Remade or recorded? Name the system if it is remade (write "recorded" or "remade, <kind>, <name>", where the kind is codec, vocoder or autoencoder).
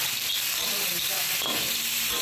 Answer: remade, vocoder, BigVGAN v2